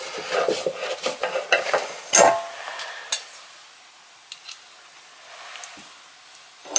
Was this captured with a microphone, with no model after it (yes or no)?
yes